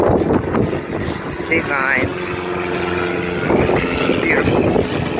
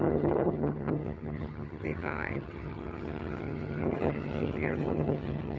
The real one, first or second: first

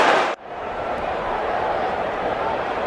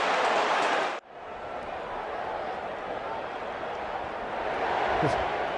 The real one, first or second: second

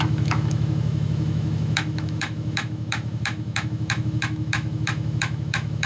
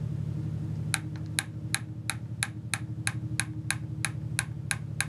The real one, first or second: second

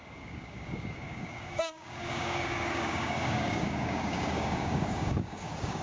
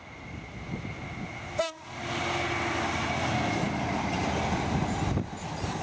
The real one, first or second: second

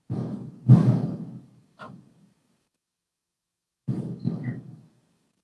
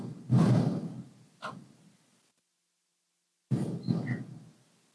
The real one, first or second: second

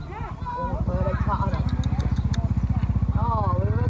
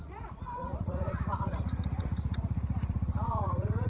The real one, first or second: first